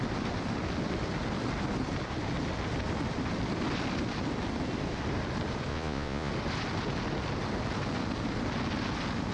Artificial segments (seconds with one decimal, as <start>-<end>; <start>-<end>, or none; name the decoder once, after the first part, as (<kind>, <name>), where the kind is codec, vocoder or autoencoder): 5.7-6.3 (vocoder, Vocos)

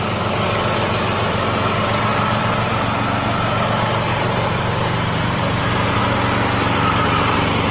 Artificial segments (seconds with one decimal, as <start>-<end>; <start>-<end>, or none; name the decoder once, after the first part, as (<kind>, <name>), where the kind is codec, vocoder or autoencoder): 2.1-2.8 (vocoder, BigVGAN v2); 4.1-6.0

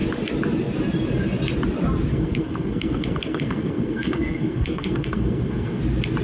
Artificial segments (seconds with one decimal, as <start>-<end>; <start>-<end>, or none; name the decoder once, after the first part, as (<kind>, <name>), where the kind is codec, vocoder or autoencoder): 2.1-5.8 (codec, SNAC)